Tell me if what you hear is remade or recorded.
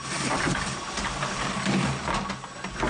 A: recorded